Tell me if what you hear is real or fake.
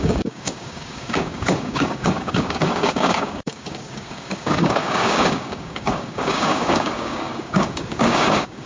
fake